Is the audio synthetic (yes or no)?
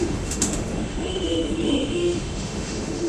yes